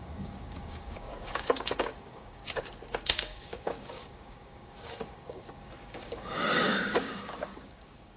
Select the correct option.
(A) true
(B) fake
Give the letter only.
B